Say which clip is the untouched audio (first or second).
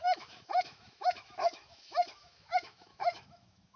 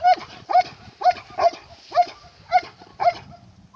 second